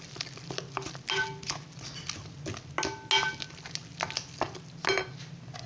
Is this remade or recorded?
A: recorded